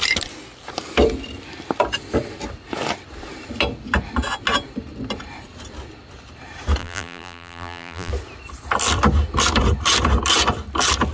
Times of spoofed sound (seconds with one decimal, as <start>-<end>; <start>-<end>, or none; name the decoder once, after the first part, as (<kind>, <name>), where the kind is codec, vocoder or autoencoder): 6.8-8.1 (vocoder, BigVGAN v2)